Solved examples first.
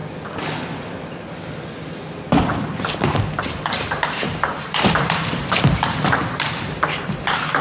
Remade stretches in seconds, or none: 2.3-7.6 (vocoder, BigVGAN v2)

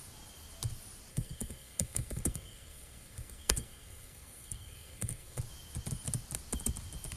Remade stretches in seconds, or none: 1.1-5.4 (codec, SNAC)

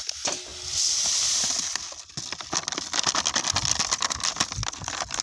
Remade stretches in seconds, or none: none

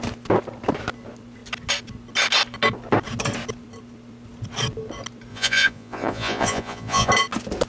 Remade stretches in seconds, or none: 5.3-7.1 (vocoder, Vocos)

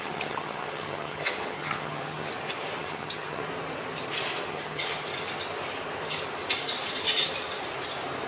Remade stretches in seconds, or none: 0.0-2.3 (vocoder, HiFi-GAN); 2.8-3.4; 4.5-5.1

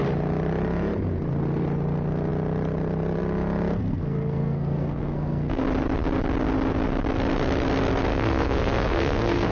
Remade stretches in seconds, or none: 3.7-5.6 (codec, SNAC); 8.1-9.5

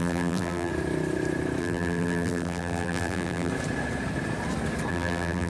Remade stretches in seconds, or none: 0.0-0.7 (vocoder, BigVGAN v2); 1.6-3.5; 4.9-5.5